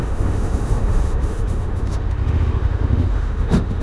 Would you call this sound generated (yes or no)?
yes